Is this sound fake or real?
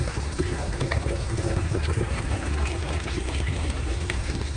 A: fake